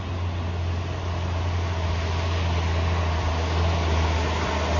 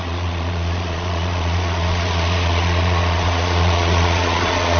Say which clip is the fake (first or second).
second